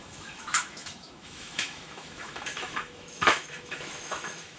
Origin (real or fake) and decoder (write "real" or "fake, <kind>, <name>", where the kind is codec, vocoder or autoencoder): fake, autoencoder, DAC-VAE